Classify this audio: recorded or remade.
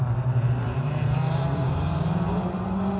remade